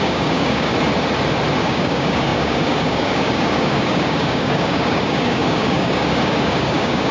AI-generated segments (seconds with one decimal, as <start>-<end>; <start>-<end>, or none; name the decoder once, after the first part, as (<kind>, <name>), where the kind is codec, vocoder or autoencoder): 0.0-0.7 (codec, DAC); 1.6-7.1